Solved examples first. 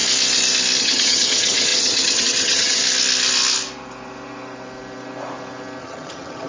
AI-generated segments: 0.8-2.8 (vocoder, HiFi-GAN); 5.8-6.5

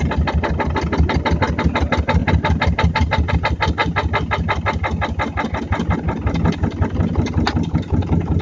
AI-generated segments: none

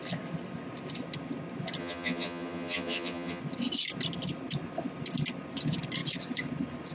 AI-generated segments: 1.8-3.4 (vocoder, HiFi-GAN)